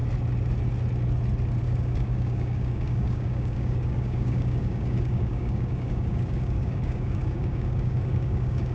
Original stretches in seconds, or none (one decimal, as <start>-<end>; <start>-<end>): 0.0-1.6